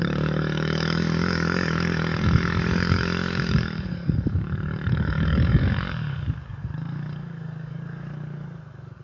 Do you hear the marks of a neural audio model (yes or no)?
yes